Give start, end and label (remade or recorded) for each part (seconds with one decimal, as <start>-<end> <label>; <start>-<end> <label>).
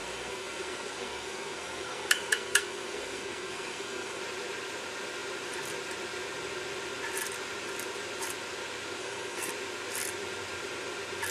0.0-4.2 remade; 4.2-9.0 recorded; 9.0-9.5 remade; 9.5-11.3 recorded